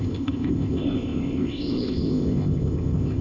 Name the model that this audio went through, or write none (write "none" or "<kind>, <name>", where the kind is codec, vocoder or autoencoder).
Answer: codec, ZipCodec